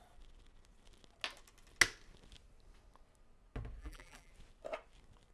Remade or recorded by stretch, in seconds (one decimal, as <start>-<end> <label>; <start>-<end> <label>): 0.0-3.8 recorded; 3.8-4.3 remade; 4.3-5.3 recorded